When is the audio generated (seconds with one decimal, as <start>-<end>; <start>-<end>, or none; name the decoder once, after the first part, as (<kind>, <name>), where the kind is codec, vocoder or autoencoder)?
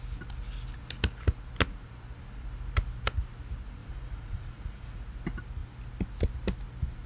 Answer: 3.8-5.0 (vocoder, Vocos)